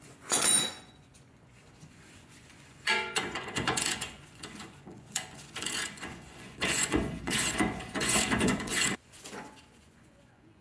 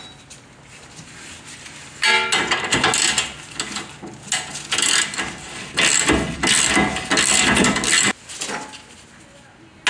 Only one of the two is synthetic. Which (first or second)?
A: first